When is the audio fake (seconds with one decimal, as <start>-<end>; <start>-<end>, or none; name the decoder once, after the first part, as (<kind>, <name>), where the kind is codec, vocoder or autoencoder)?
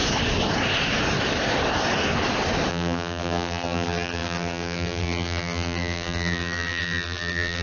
2.7-7.6 (vocoder, BigVGAN v2)